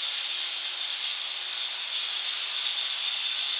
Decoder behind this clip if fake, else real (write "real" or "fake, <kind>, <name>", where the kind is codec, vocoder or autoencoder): real